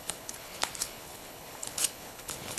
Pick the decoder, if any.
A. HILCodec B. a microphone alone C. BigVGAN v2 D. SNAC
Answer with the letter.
A